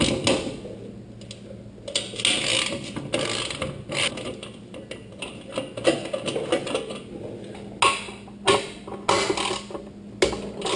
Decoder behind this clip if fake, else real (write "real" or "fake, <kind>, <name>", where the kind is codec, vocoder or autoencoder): real